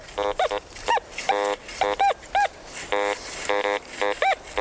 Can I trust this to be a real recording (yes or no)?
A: yes